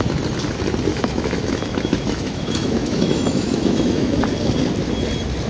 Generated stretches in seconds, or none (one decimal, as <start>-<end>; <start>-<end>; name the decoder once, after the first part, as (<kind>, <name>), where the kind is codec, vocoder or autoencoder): 0.9-4.2 (autoencoder, DAC-VAE)

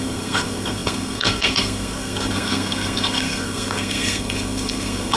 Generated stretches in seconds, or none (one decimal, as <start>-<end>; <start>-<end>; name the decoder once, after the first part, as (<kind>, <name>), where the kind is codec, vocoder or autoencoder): 0.0-5.2 (codec, SNAC)

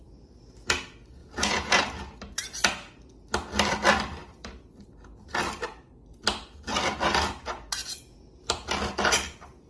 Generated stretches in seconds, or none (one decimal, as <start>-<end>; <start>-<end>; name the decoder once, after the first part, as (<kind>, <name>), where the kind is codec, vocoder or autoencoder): 1.2-1.8 (vocoder, Vocos); 7.8-8.3

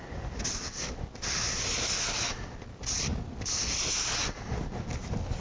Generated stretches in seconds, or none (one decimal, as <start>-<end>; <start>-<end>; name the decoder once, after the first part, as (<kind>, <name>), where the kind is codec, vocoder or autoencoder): none

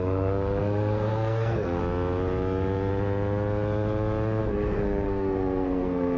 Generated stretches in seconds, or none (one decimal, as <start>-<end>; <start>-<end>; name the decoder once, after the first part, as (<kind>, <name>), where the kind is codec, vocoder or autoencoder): 0.0-1.8 (codec, SNAC); 4.4-6.2